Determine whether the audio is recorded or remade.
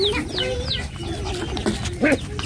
recorded